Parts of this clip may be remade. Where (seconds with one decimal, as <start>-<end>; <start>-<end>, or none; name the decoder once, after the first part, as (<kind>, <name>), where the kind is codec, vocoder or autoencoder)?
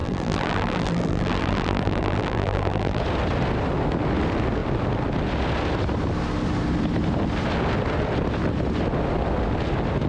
0.0-3.0 (vocoder, BigVGAN v2)